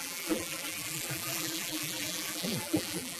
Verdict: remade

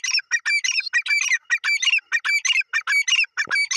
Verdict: recorded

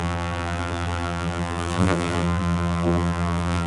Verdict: remade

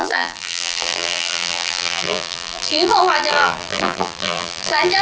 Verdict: remade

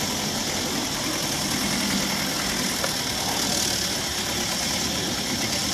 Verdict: recorded